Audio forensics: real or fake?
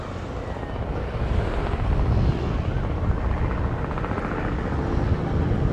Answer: real